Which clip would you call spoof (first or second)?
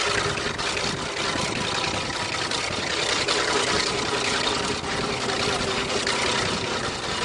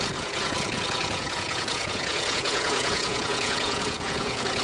second